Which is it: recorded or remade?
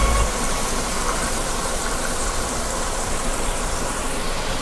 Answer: remade